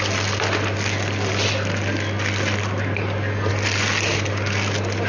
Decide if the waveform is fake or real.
real